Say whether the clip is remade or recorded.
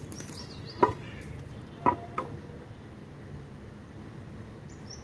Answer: recorded